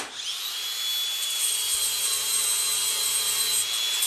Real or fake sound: real